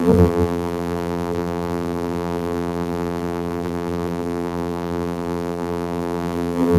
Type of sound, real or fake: fake